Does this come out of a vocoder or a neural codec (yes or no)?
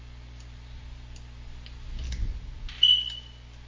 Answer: no